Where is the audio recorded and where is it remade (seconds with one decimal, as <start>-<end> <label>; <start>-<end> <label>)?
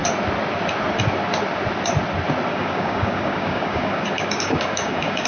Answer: 0.0-2.5 recorded; 2.5-5.3 remade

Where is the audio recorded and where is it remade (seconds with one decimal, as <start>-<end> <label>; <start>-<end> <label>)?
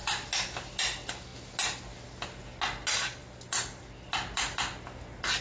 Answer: 0.0-5.4 recorded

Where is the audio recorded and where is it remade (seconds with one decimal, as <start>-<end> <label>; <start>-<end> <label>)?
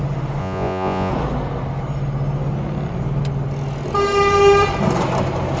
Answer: 0.0-0.4 recorded; 0.4-1.1 remade; 1.1-5.6 recorded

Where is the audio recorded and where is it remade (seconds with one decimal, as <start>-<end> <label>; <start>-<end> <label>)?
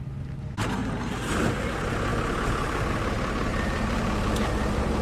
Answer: 0.0-0.8 recorded; 0.8-1.5 remade; 1.5-3.5 recorded; 3.5-5.0 remade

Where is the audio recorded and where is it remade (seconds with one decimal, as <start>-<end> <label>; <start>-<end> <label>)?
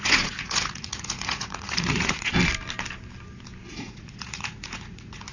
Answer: 0.0-2.3 remade; 2.3-3.7 recorded; 3.7-5.3 remade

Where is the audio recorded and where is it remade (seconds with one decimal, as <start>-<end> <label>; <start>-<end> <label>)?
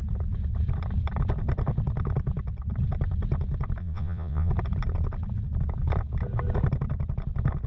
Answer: 0.0-3.8 recorded; 3.8-4.5 remade; 4.5-7.7 recorded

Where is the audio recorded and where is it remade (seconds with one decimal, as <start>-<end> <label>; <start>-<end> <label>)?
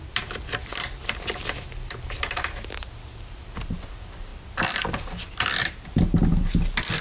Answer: 0.0-7.0 recorded